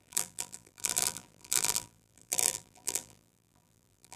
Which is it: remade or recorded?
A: remade